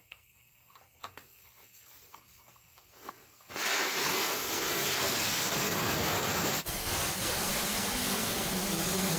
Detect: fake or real fake